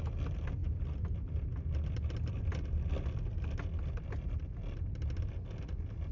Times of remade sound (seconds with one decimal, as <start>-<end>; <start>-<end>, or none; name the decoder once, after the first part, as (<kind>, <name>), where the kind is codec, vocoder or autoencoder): none